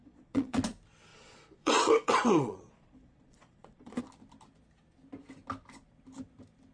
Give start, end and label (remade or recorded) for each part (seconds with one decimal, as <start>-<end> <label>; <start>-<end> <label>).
0.0-0.6 remade; 0.6-1.1 recorded; 1.1-4.0 remade; 4.0-6.7 recorded